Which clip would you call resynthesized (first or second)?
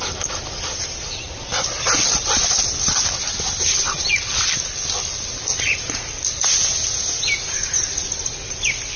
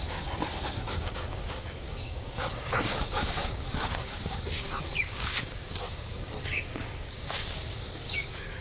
second